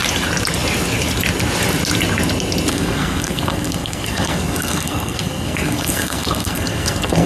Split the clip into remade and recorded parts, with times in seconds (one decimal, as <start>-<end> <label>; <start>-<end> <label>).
0.0-2.7 recorded; 2.7-7.3 remade